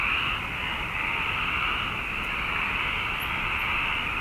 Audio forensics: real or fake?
real